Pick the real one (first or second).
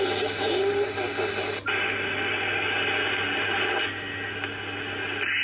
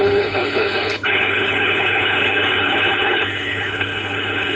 first